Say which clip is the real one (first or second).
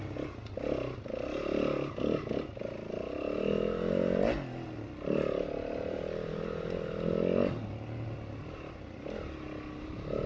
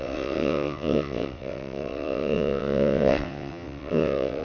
first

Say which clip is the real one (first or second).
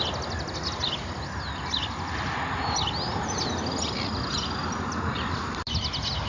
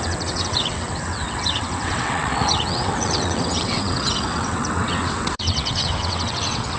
first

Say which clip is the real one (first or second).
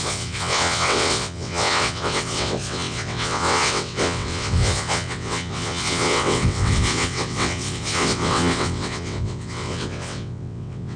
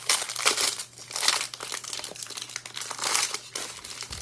second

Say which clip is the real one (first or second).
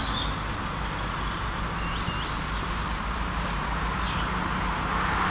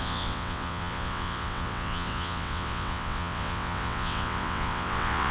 first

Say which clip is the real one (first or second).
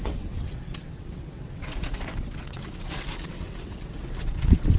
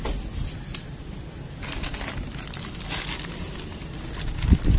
second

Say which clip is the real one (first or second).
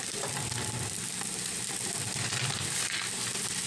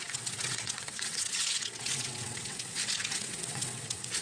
first